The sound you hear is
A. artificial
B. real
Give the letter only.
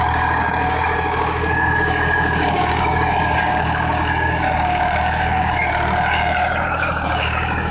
A